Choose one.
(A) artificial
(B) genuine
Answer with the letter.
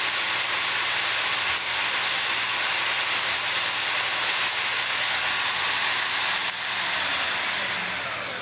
B